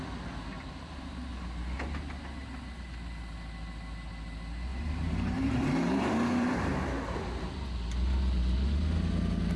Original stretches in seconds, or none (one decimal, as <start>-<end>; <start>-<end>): 0.0-0.5; 1.3-4.7; 7.2-9.6